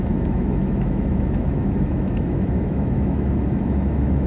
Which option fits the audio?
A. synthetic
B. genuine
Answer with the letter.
A